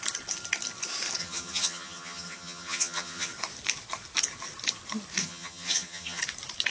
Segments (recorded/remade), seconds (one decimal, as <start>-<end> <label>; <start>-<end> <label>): 0.0-1.2 recorded; 1.2-3.3 remade; 3.3-5.2 recorded; 5.2-6.2 remade; 6.2-6.7 recorded